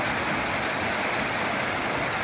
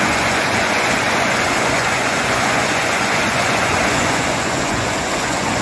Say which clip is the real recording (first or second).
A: first